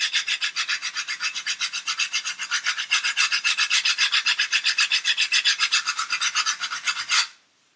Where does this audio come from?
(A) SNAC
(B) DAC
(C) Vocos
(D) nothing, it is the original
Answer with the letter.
D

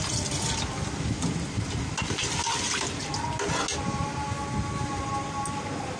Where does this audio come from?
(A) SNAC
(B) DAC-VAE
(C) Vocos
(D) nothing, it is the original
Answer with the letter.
D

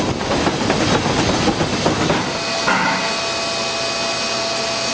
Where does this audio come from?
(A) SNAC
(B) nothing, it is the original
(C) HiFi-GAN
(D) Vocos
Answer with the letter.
B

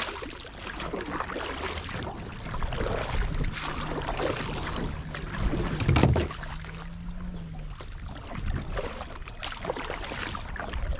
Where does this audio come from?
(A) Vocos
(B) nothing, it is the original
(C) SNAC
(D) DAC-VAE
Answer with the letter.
B